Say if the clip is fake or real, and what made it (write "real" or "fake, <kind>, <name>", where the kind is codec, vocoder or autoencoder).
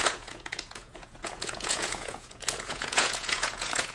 fake, vocoder, Vocos